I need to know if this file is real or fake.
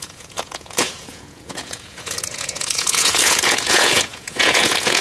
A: fake